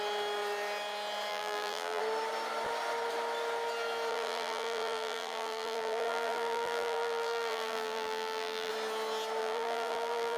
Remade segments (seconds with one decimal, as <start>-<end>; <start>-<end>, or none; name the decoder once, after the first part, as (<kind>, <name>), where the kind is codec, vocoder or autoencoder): 1.3-2.0 (vocoder, BigVGAN v2); 4.1-8.7; 9.4-10.4

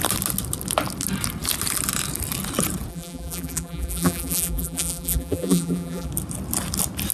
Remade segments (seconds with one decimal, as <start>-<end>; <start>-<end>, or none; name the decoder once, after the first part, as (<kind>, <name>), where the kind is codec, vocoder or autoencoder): 2.9-6.1 (vocoder, BigVGAN v2)